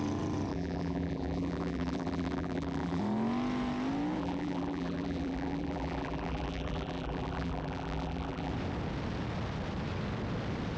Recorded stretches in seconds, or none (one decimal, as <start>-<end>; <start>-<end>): 0.0-0.5; 3.0-4.2; 8.5-10.8